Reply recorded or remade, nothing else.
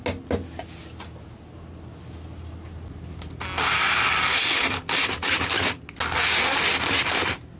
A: recorded